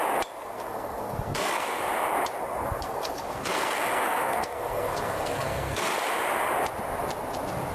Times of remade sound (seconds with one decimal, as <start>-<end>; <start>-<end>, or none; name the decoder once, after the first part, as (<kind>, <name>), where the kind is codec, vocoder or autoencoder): 0.4-1.8 (codec, SNAC); 2.4-5.9